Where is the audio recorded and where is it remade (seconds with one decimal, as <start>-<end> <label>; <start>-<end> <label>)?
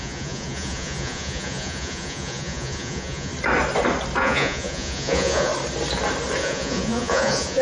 0.0-3.3 remade; 3.3-4.2 recorded; 4.2-5.5 remade; 5.5-6.4 recorded; 6.4-7.6 remade